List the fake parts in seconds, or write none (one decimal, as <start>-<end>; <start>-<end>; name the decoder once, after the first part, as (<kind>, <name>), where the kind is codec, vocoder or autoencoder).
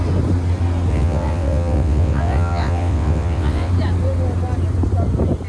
0.9-3.7 (vocoder, WaveNeXt)